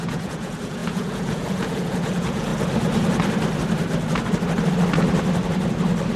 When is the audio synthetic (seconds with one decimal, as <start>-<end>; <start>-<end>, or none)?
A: 0.0-2.5